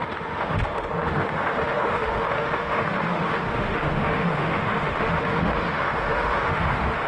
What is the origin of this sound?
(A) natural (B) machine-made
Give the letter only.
B